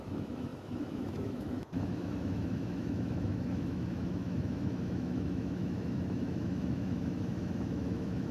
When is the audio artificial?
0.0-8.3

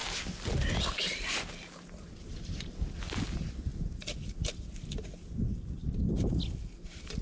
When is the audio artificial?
none

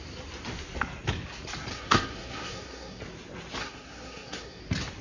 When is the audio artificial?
1.7-3.0; 3.6-4.6

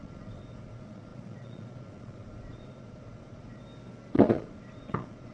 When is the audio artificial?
0.0-3.6; 4.1-5.3

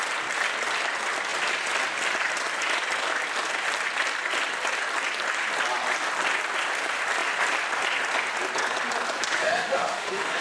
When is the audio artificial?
9.4-10.4

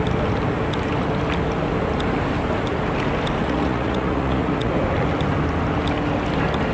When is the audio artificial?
3.4-4.7

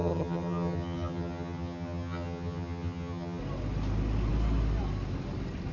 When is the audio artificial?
0.0-3.4